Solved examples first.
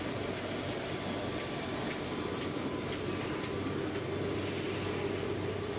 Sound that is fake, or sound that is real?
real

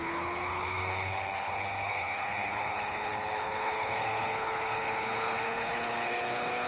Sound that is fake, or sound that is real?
fake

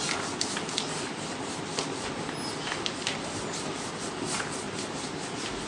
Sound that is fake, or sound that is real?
real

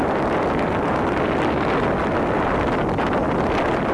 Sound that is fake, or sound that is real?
real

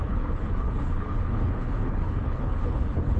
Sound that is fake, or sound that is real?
fake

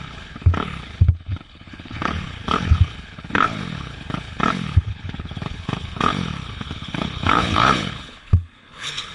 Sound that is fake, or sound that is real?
fake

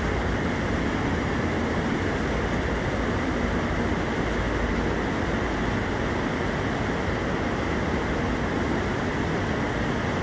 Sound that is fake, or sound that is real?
real